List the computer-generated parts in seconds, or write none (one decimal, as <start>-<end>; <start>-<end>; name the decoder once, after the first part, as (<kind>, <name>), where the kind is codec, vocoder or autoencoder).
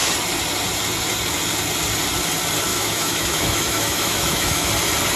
2.7-4.7 (autoencoder, DAC-VAE)